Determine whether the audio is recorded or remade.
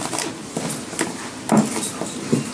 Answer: recorded